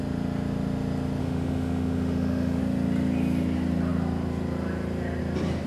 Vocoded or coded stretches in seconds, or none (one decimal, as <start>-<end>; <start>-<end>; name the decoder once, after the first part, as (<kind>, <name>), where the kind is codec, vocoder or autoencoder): 1.2-2.6 (autoencoder, DAC-VAE)